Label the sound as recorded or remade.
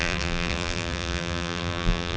remade